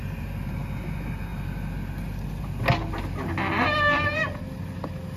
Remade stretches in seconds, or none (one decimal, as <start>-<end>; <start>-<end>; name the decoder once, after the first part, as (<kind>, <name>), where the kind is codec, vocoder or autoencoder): none